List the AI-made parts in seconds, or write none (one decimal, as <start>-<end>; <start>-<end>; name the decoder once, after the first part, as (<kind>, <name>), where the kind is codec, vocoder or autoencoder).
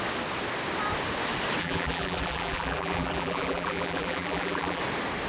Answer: 1.6-4.8 (vocoder, BigVGAN v2)